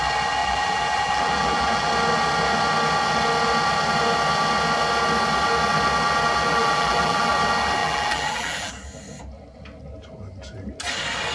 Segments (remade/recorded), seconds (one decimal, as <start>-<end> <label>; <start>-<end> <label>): 0.0-0.4 recorded; 0.4-1.9 remade; 1.9-6.5 recorded; 6.5-7.3 remade; 7.3-7.8 recorded; 7.8-8.7 remade; 8.7-11.3 recorded